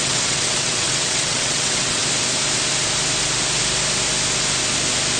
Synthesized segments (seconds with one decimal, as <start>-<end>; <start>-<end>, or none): 0.0-2.0